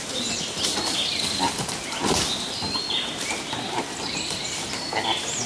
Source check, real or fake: real